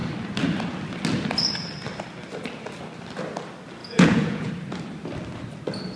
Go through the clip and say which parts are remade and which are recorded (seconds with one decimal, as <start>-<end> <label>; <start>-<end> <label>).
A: 0.0-3.8 recorded; 3.8-4.5 remade; 4.5-6.0 recorded